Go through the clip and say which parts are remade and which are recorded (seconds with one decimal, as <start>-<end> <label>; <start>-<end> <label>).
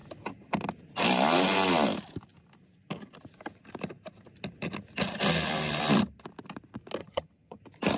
0.0-7.0 recorded; 7.0-7.6 remade; 7.6-8.0 recorded